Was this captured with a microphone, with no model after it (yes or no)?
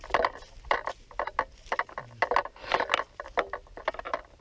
yes